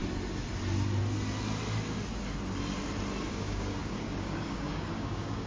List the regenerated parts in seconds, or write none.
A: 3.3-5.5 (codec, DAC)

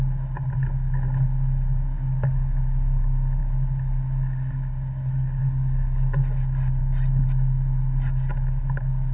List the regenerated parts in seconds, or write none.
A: none

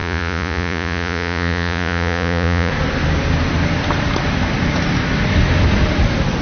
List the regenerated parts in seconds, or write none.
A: 0.0-2.7 (vocoder, Vocos)